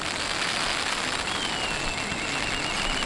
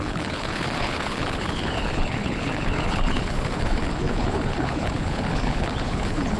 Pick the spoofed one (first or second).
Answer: second